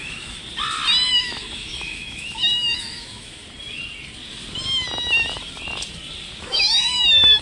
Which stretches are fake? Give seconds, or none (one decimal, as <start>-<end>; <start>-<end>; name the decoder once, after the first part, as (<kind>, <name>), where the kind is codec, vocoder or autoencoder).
0.0-0.4 (autoencoder, DAC-VAE); 1.1-3.4; 6.4-7.4